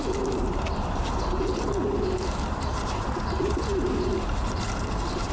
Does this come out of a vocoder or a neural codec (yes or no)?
no